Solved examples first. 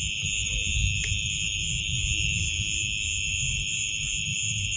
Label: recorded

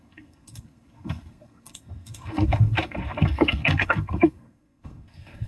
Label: remade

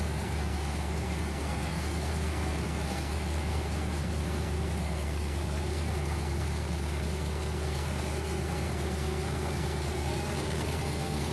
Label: remade